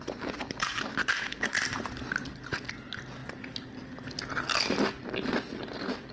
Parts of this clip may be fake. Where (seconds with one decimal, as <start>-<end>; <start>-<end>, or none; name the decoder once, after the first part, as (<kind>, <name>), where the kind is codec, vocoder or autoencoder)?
none